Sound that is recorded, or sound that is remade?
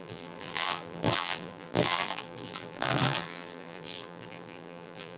remade